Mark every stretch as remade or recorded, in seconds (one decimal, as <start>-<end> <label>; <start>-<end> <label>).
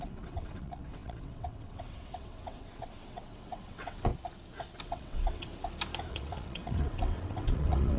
0.0-4.1 remade; 4.1-4.8 recorded; 4.8-5.5 remade; 5.5-6.1 recorded; 6.1-8.0 remade